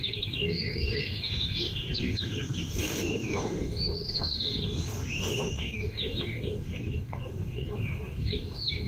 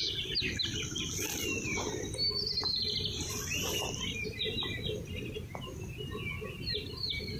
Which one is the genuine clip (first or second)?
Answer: second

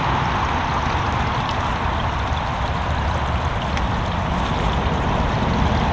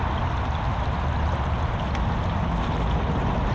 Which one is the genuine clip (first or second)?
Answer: second